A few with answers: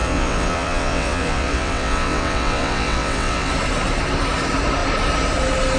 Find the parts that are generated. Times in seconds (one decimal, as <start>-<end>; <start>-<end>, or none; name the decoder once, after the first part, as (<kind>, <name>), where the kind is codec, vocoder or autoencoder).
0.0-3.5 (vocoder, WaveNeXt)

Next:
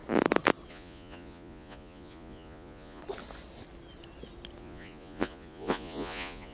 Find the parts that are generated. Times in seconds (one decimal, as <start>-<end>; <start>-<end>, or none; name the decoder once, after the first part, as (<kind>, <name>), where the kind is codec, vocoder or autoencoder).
0.7-3.0 (vocoder, Vocos); 4.6-6.5

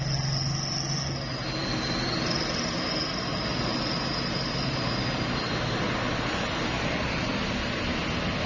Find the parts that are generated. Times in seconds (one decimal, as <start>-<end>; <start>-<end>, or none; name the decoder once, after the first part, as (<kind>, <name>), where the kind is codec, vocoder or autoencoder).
none